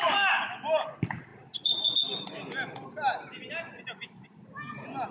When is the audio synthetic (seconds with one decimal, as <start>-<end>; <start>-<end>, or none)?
none